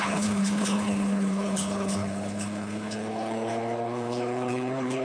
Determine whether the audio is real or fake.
fake